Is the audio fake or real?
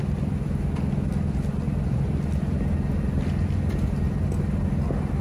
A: real